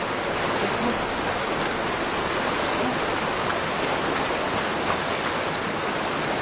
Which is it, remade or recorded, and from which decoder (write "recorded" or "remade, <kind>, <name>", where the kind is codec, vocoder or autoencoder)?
recorded